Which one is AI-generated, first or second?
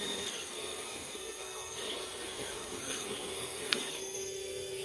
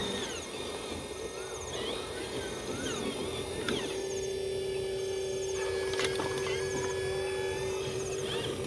first